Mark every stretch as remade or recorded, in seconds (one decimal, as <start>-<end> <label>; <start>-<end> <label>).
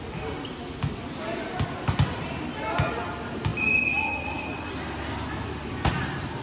0.0-6.4 recorded